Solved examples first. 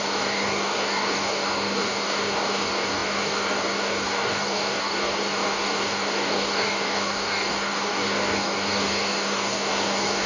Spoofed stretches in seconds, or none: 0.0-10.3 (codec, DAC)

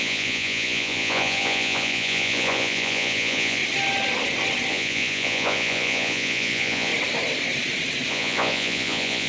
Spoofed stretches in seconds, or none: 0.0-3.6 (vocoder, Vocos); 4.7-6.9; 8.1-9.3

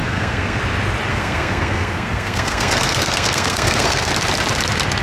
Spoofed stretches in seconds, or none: 0.0-0.6 (codec, SNAC); 1.1-4.1

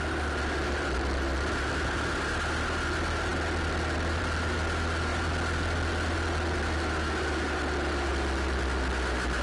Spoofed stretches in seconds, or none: none

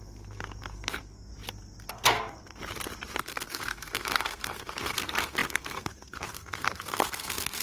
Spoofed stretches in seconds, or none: 0.0-1.3 (codec, SNAC); 1.9-2.6; 3.2-7.6